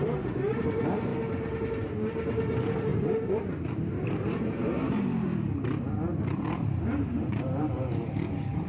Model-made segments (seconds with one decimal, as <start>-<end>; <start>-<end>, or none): 0.0-1.1; 2.1-5.3; 6.2-8.7